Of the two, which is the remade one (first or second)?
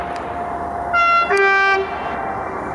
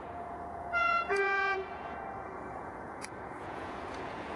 second